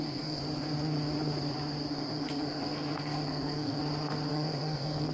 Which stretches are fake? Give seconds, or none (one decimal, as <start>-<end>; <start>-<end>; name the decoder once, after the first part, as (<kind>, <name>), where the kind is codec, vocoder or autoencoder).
0.0-0.4 (codec, SNAC); 1.9-3.8; 4.3-5.1